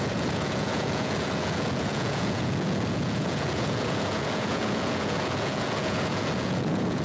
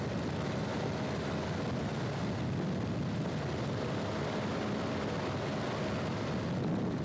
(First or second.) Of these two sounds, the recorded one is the second